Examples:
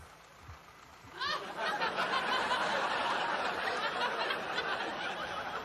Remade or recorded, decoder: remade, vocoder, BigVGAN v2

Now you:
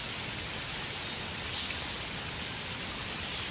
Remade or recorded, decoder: recorded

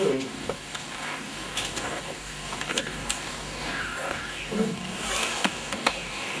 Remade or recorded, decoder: remade, codec, DAC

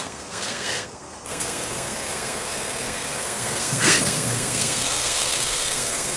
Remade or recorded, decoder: remade, codec, SNAC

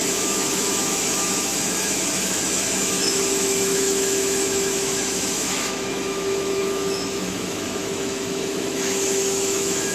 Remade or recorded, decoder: remade, autoencoder, DAC-VAE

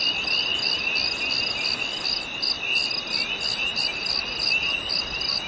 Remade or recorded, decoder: recorded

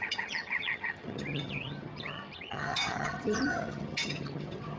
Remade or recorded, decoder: remade, vocoder, HiFi-GAN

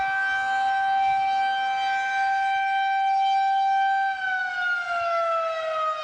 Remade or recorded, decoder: recorded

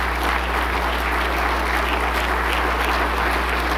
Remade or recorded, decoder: recorded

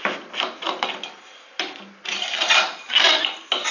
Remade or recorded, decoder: recorded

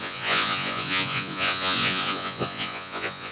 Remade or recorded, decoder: remade, vocoder, Vocos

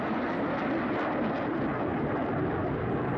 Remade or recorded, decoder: recorded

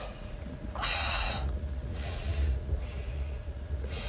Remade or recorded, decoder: remade, vocoder, Vocos